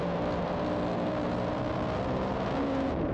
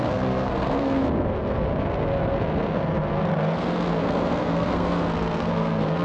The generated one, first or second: second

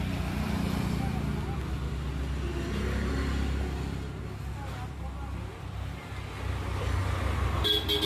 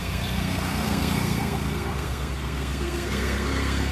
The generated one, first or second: second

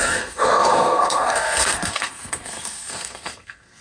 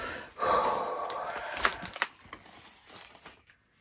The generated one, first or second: first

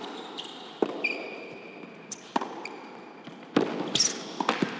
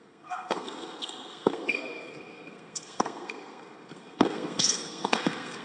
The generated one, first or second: second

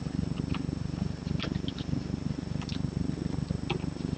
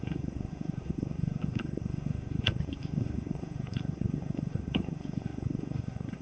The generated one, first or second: second